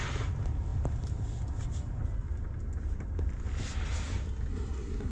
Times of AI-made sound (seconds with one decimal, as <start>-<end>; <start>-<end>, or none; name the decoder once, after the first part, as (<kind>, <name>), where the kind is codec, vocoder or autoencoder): 4.5-5.1 (codec, SNAC)